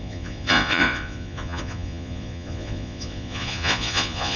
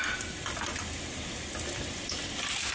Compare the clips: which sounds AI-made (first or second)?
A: first